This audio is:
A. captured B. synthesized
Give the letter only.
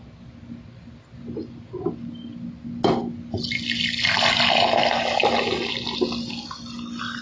A